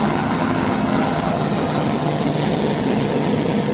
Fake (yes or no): yes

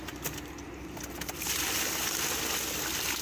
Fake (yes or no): no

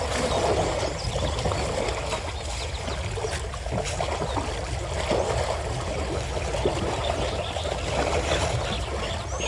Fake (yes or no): no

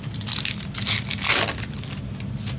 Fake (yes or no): no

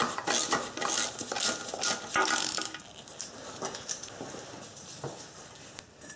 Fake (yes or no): no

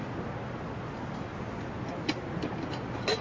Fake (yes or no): no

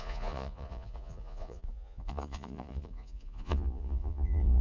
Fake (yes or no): yes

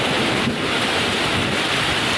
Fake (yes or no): no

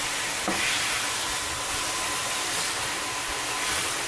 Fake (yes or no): no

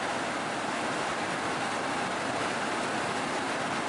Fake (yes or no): no